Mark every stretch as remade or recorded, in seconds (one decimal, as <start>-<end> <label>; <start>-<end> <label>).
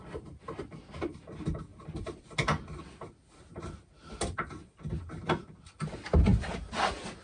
0.0-1.7 recorded; 1.7-2.3 remade; 2.3-4.6 recorded; 4.6-5.7 remade; 5.7-7.2 recorded